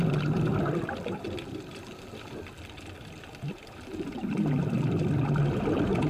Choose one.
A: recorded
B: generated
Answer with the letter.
B